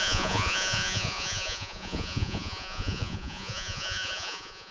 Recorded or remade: remade